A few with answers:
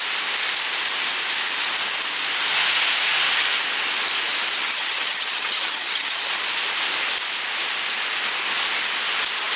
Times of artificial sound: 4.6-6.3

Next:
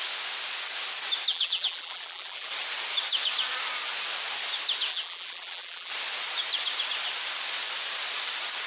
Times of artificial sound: 1.3-2.5; 4.9-5.9

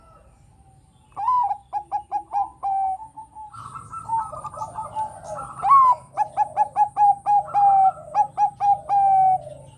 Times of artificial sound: none

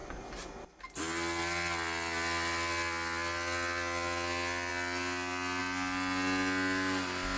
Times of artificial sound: none

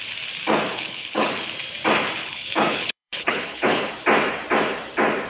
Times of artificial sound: 0.7-1.3; 2.2-3.9

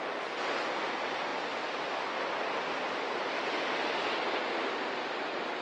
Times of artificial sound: none

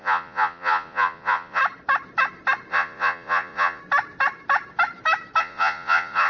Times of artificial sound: 0.0-1.6; 2.7-3.8; 5.4-6.3

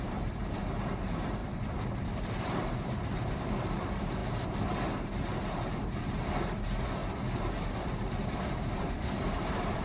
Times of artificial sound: 0.0-1.4; 2.1-4.2; 5.2-7.0; 8.1-9.8